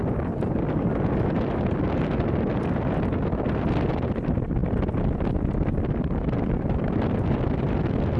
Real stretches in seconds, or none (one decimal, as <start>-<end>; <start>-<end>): 0.0-8.2